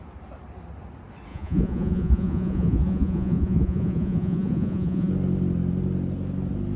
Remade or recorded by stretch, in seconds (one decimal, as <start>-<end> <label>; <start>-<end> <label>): 0.0-1.3 recorded; 1.3-5.1 remade; 5.1-6.8 recorded

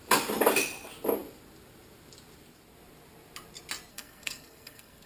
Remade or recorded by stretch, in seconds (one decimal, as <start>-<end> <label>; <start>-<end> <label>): 0.0-3.9 recorded; 3.9-5.1 remade

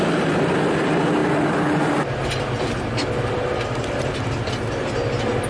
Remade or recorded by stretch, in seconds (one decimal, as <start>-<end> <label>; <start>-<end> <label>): 0.0-5.5 recorded

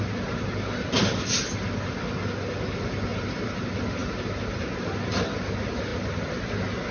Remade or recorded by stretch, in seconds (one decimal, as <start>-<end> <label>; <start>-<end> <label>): 0.0-1.0 recorded; 1.0-1.9 remade; 1.9-5.9 recorded; 5.9-6.4 remade; 6.4-6.9 recorded

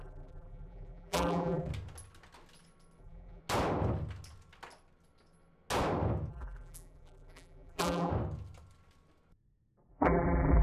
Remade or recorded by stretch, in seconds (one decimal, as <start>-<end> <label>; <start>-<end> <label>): 0.0-1.7 remade; 1.7-3.0 recorded; 3.0-3.4 remade; 3.4-6.3 recorded; 6.3-8.1 remade; 8.1-9.9 recorded; 9.9-10.6 remade